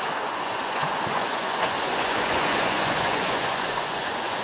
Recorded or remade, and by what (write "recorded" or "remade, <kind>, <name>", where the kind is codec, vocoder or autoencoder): remade, vocoder, Vocos